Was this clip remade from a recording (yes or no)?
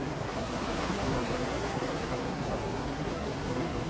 yes